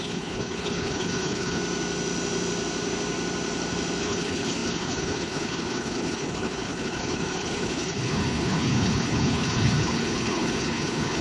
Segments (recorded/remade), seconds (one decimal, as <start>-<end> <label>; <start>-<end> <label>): 0.0-1.6 remade; 1.6-4.0 recorded; 4.0-11.2 remade